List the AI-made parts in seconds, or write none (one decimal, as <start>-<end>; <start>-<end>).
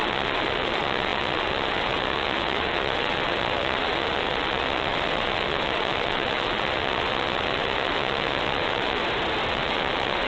0.0-9.0; 9.5-10.3